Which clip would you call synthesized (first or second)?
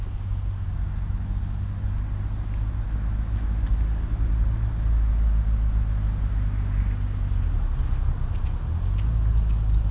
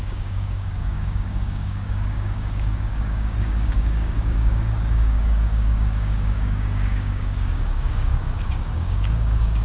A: second